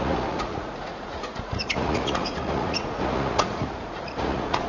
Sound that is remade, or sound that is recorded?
remade